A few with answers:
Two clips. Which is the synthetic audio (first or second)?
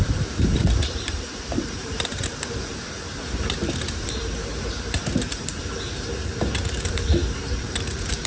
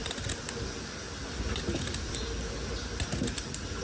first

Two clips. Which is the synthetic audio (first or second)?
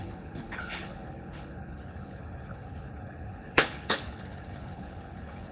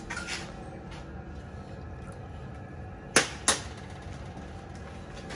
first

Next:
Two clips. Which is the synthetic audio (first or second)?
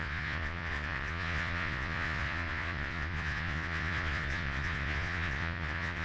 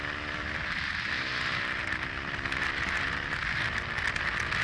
first